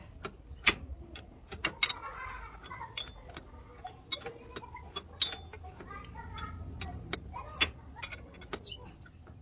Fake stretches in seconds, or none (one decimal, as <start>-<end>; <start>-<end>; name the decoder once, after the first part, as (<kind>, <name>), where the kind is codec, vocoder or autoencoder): none